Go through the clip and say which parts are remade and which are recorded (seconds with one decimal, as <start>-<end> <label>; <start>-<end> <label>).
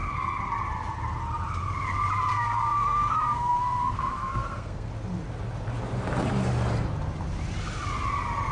0.0-0.6 remade; 0.6-2.3 recorded; 2.3-4.9 remade; 4.9-8.5 recorded